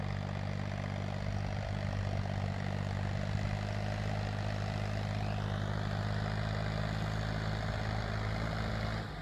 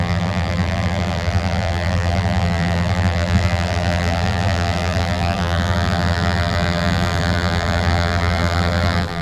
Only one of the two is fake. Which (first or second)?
second